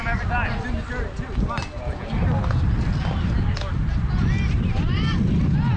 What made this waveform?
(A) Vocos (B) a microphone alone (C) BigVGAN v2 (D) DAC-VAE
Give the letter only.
B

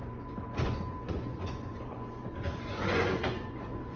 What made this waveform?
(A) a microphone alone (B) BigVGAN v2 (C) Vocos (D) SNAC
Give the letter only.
C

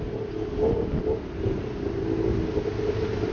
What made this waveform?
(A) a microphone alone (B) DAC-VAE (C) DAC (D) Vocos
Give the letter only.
A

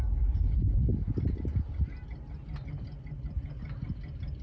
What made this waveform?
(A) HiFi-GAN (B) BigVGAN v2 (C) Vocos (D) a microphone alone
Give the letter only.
D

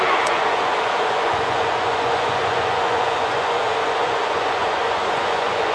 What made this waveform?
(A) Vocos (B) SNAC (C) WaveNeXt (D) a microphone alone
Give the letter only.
A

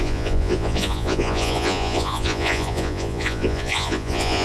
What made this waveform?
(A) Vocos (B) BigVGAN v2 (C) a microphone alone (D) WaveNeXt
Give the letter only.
A